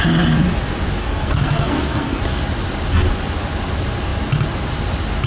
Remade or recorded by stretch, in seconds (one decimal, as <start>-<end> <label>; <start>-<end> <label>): 0.0-1.0 recorded; 1.0-2.2 remade; 2.2-5.3 recorded